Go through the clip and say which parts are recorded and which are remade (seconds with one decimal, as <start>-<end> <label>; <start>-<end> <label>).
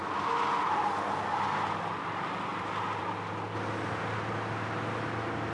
0.0-5.5 recorded